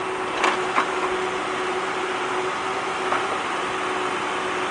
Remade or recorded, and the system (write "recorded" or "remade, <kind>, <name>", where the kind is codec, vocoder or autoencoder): recorded